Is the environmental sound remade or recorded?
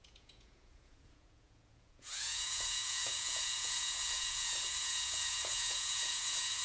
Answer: remade